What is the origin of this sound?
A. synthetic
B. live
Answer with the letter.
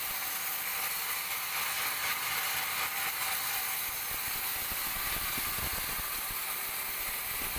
B